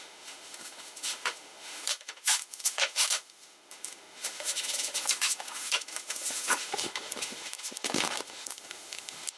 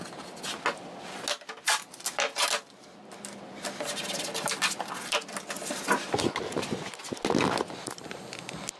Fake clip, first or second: first